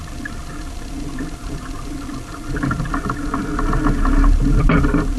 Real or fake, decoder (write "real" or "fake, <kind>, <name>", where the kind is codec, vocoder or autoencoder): real